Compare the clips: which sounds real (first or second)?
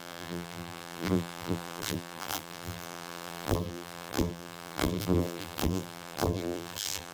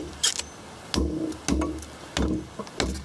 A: second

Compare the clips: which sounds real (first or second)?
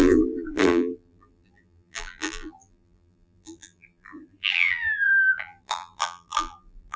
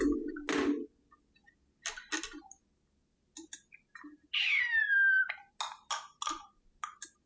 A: second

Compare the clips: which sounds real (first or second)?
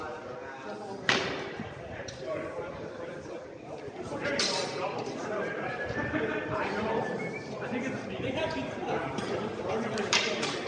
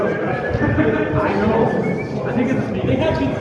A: second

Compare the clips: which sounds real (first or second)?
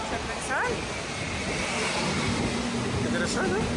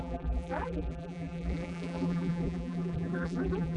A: first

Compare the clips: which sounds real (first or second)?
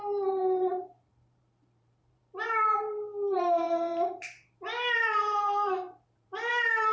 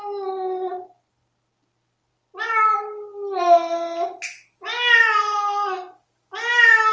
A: second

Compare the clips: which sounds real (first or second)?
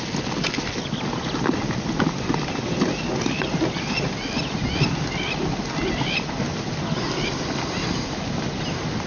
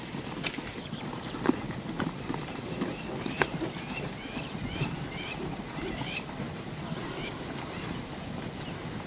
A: first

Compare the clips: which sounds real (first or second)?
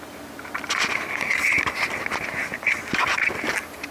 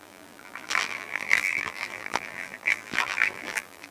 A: first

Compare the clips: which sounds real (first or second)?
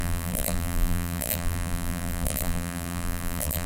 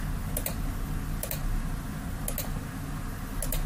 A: second